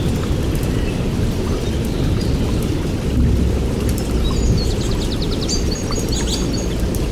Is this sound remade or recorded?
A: recorded